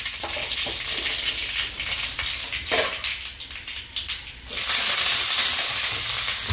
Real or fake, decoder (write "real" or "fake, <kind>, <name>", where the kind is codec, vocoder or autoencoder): real